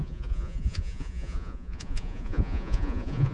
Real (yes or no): no